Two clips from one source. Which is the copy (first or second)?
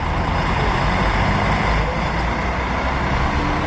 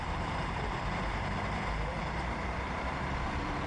second